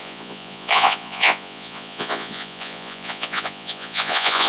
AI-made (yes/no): yes